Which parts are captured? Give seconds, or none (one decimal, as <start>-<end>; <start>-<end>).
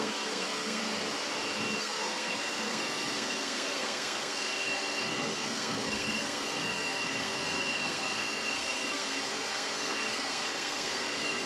0.8-1.8